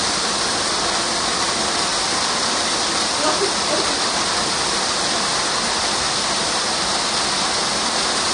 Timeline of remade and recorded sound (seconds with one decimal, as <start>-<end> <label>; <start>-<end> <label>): 0.0-8.3 recorded